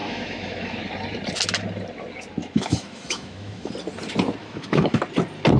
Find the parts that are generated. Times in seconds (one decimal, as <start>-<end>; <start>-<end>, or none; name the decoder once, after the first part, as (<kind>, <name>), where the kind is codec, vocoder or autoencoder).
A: 0.0-0.9 (autoencoder, DAC-VAE); 2.4-3.7; 4.4-5.0